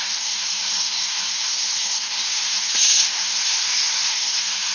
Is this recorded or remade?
remade